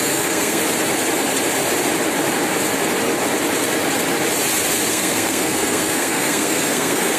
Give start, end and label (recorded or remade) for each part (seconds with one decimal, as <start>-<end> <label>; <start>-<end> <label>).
0.0-0.6 remade; 0.6-4.9 recorded; 4.9-7.2 remade